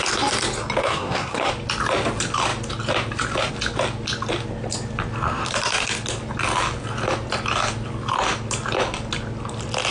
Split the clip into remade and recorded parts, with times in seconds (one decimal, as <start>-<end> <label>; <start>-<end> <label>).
0.0-0.8 recorded; 0.8-1.5 remade; 1.5-9.9 recorded